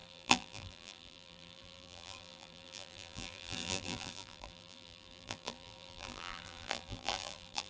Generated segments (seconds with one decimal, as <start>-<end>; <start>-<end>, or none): 0.0-7.7